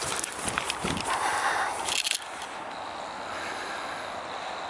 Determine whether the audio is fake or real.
real